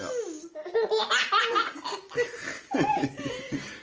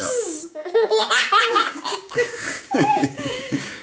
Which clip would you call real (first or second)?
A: first